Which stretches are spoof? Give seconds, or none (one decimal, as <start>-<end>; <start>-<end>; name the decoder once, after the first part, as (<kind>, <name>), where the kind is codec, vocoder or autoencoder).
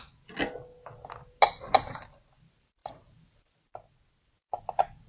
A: 2.8-3.4 (vocoder, BigVGAN v2)